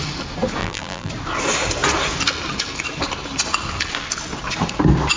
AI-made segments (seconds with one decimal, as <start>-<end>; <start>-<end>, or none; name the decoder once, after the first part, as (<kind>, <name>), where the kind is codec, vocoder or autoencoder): 0.6-1.1 (vocoder, BigVGAN v2)